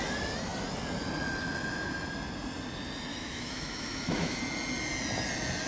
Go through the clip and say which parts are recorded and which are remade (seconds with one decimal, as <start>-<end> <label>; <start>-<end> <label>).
0.0-3.1 recorded; 3.1-4.4 remade; 4.4-5.7 recorded